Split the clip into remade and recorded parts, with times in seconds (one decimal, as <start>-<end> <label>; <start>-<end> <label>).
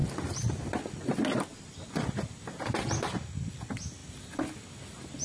0.0-0.8 remade; 0.8-1.5 recorded; 1.5-2.7 remade; 2.7-5.2 recorded